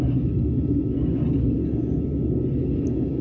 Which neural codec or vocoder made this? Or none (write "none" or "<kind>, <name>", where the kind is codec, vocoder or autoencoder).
none